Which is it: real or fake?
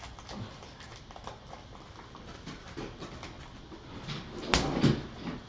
real